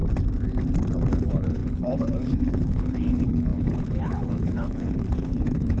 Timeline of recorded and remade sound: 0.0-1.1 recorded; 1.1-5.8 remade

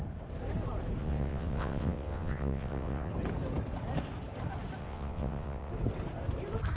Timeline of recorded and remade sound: 0.0-1.0 recorded; 1.0-3.1 remade; 3.1-4.8 recorded; 4.8-5.7 remade; 5.7-6.8 recorded

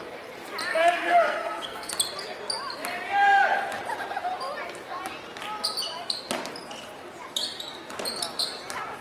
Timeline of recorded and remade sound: 0.0-0.7 recorded; 0.7-1.9 remade; 1.9-9.0 recorded

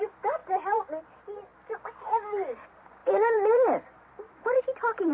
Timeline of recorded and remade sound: 0.0-1.5 remade; 1.5-2.6 recorded; 2.6-5.1 remade

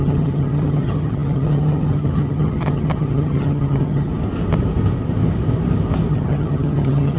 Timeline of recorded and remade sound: 0.0-4.1 remade; 4.1-6.1 recorded; 6.1-7.2 remade